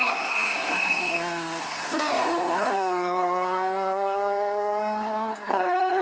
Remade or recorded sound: remade